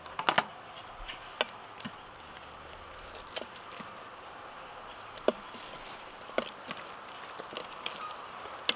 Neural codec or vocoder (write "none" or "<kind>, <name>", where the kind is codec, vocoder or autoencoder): none